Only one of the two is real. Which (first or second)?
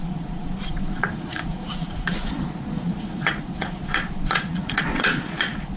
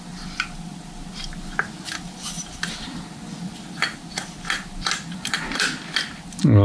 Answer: second